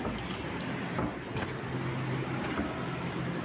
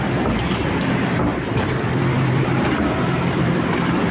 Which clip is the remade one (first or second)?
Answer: second